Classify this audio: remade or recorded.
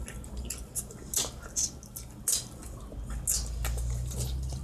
recorded